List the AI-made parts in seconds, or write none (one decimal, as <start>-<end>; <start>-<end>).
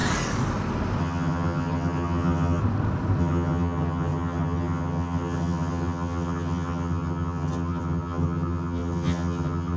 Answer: 1.0-2.6; 3.2-9.8